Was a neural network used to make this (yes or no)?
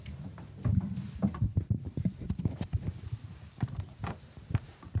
yes